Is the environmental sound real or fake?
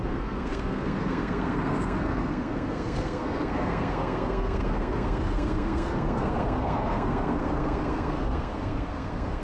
fake